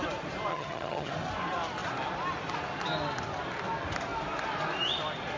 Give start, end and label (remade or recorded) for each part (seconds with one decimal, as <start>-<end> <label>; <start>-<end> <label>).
0.0-0.5 recorded; 0.5-1.1 remade; 1.1-5.4 recorded